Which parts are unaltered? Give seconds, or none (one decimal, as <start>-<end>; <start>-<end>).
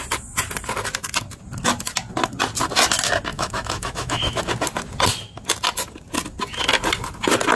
0.0-3.3; 4.4-7.6